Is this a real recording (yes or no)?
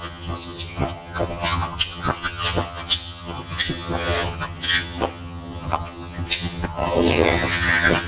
no